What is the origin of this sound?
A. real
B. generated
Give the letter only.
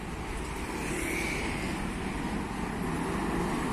A